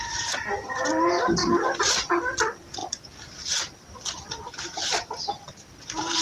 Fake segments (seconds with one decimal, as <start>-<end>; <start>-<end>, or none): none